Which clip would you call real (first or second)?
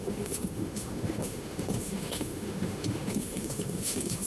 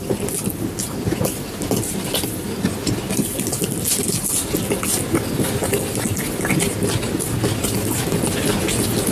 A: second